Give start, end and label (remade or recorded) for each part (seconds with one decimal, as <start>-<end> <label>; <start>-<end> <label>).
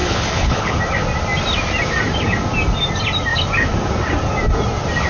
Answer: 0.0-0.8 remade; 0.8-5.1 recorded